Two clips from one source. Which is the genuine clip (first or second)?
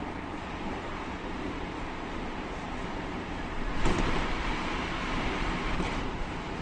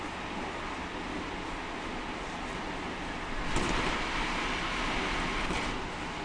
second